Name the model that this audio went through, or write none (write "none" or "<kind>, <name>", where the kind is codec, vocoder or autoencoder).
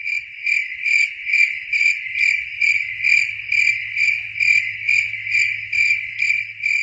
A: none